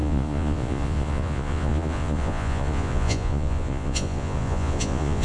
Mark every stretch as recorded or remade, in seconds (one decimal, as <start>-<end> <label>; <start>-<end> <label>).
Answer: 0.0-5.2 remade